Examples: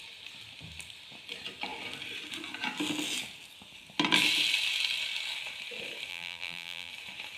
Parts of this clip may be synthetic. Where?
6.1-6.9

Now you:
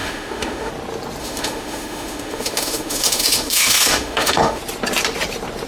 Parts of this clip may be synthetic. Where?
0.0-0.7; 1.2-4.6

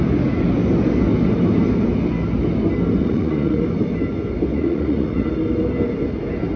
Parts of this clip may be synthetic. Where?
3.0-3.6; 4.5-5.3

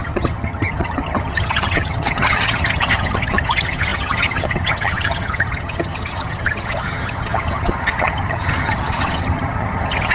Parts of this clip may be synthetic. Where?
0.0-10.1

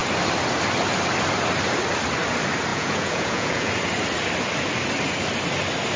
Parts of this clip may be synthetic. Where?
2.7-3.7

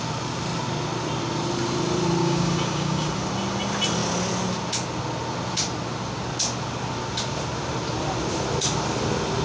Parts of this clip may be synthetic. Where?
2.2-3.1

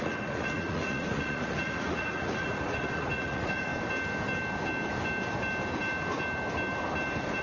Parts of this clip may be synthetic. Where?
0.0-3.7